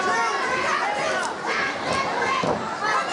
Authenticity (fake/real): real